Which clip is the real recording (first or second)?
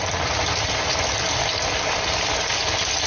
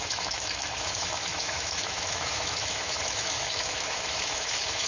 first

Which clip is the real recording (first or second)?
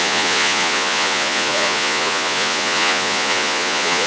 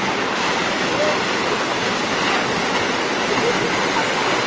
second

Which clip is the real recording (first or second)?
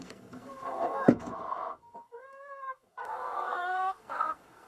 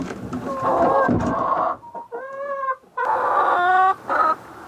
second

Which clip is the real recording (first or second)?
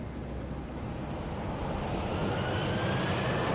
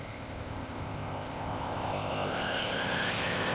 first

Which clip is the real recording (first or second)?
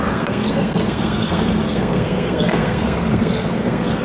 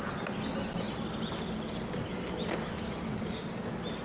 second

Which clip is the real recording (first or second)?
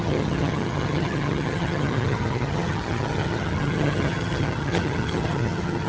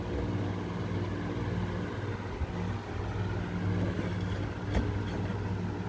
second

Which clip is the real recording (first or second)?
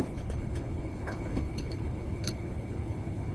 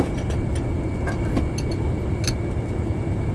second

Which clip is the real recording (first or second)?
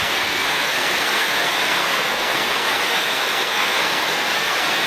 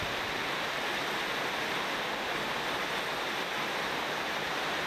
second